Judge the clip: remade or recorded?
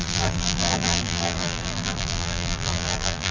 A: remade